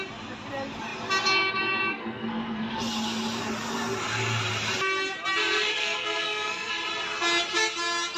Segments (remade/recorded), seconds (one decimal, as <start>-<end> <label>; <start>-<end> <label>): 0.0-1.9 recorded; 1.9-2.7 remade; 2.7-5.8 recorded; 5.8-6.7 remade; 6.7-8.2 recorded